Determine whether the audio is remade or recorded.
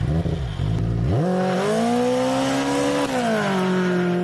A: recorded